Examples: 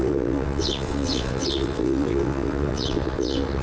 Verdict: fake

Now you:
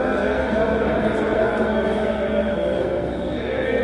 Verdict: fake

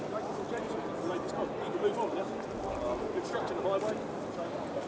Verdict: real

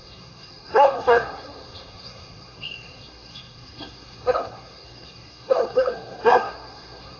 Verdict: fake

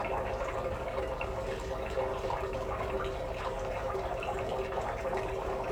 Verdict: fake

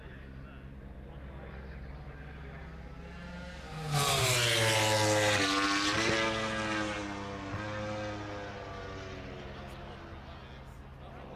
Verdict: real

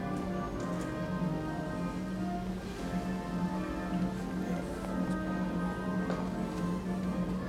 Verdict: real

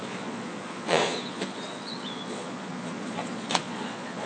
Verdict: fake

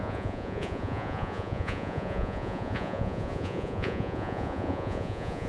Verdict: fake